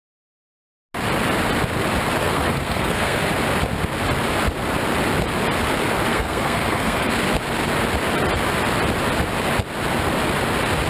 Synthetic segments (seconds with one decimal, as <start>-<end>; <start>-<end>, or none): 2.2-3.3; 6.1-7.1